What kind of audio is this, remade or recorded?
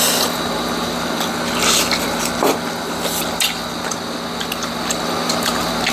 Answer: recorded